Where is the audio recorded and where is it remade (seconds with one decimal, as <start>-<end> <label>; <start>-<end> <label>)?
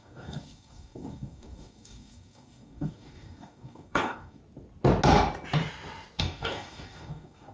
0.0-4.4 remade; 4.4-6.2 recorded; 6.2-7.5 remade